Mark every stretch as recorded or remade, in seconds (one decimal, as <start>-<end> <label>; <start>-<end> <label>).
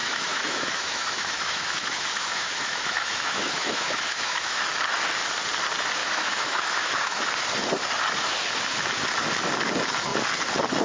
0.0-4.6 remade; 4.6-6.0 recorded; 6.0-7.3 remade; 7.3-10.8 recorded